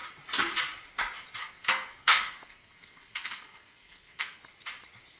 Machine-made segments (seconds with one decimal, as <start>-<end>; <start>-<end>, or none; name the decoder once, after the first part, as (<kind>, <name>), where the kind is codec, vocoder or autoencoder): 1.4-4.4 (codec, SNAC)